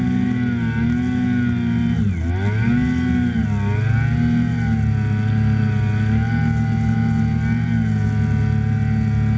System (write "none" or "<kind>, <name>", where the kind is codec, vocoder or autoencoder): none